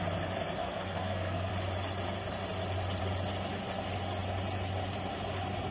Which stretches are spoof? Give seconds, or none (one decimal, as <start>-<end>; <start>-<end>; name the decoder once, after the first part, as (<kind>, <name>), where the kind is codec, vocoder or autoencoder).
0.6-1.5 (codec, SNAC)